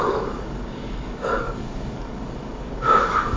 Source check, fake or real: fake